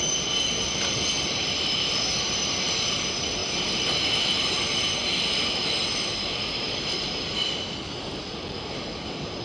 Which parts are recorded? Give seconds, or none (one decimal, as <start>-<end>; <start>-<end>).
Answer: 0.0-9.4